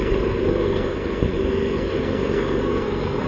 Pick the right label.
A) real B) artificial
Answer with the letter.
B